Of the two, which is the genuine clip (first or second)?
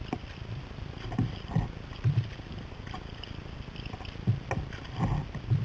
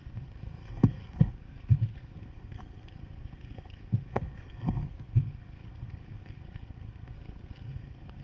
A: first